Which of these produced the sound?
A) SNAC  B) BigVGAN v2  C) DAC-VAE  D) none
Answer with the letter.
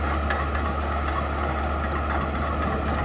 D